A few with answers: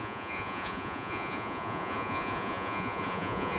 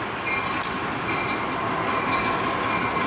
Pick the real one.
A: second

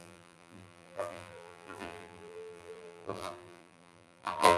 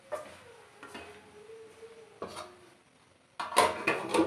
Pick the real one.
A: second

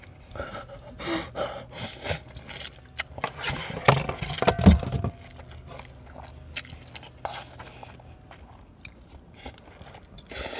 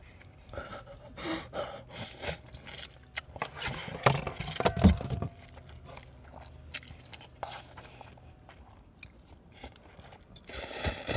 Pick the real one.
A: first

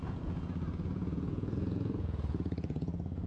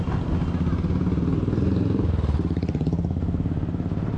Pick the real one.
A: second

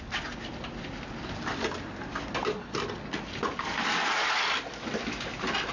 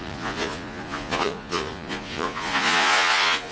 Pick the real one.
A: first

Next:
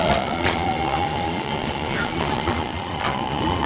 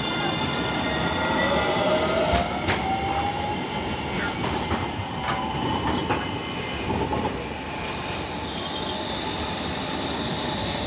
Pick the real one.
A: second